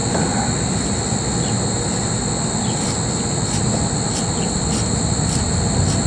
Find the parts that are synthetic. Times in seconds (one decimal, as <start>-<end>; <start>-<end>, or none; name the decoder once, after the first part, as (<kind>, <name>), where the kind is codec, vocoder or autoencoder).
none